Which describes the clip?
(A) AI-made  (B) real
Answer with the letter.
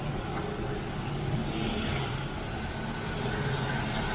B